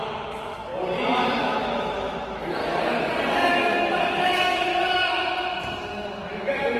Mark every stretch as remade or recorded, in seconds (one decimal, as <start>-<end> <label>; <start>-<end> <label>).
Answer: 0.0-0.7 remade; 0.7-1.4 recorded; 1.4-2.6 remade; 2.6-3.5 recorded; 3.5-4.7 remade; 4.7-5.9 recorded; 5.9-6.8 remade